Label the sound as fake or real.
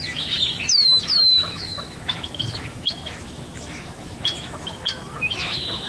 fake